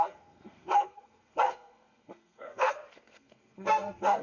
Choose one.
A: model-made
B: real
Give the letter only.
A